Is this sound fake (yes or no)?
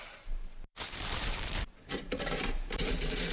yes